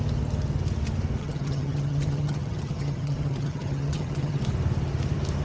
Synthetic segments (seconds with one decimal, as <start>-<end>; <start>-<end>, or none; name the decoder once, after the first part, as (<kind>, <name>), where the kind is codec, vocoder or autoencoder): 1.2-4.4 (vocoder, HiFi-GAN)